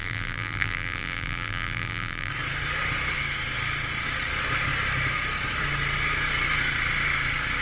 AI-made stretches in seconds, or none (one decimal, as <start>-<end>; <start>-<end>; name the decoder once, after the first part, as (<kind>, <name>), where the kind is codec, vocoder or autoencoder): 0.0-2.3 (vocoder, BigVGAN v2)